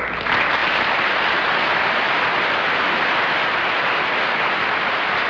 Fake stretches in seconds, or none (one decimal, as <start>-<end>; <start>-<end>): none